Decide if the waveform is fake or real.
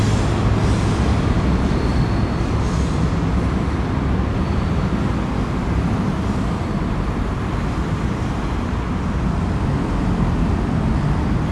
real